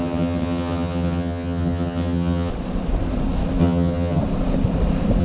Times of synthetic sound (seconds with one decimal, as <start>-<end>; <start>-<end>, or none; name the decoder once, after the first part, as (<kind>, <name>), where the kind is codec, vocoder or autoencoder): 0.0-2.5 (vocoder, HiFi-GAN); 3.6-4.2